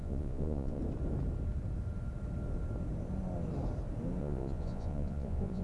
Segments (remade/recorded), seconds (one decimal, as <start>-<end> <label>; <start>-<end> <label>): 0.0-0.8 remade; 0.8-4.2 recorded; 4.2-5.6 remade